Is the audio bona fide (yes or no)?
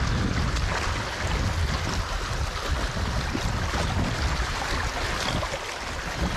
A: yes